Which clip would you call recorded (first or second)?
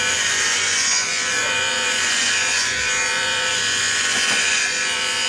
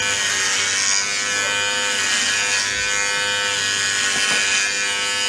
second